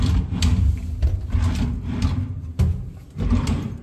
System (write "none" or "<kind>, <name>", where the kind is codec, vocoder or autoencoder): none